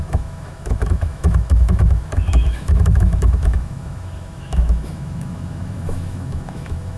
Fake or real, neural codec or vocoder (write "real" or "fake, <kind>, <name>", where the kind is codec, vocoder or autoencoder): fake, autoencoder, DAC-VAE